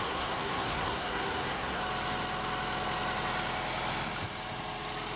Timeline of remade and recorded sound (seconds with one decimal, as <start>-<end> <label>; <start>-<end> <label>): 0.0-1.8 remade; 1.8-5.2 recorded